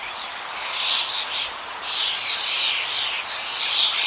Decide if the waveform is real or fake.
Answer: real